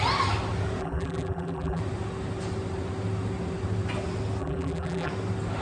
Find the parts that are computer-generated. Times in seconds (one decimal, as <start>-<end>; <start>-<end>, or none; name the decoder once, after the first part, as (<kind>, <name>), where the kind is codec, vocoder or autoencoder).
0.8-1.8 (vocoder, BigVGAN v2); 4.4-5.1